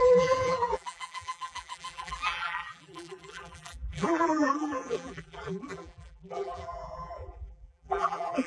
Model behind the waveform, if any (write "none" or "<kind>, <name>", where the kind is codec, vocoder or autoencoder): vocoder, BigVGAN v2